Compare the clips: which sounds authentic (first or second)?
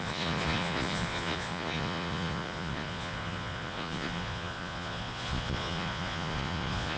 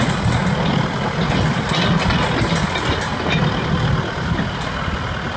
second